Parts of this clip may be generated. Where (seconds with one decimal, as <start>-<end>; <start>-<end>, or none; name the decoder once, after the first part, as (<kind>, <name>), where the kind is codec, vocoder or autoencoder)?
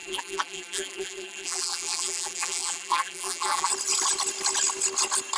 0.0-3.7 (vocoder, BigVGAN v2)